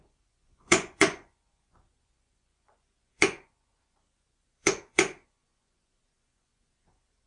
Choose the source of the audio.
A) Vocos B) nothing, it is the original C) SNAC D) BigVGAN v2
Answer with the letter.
A